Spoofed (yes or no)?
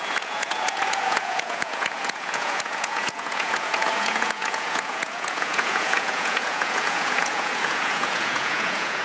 yes